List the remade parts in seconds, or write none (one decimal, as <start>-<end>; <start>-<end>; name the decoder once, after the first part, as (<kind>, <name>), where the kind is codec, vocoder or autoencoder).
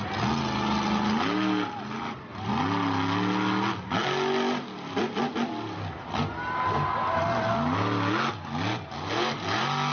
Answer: none